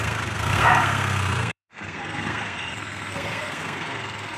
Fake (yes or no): yes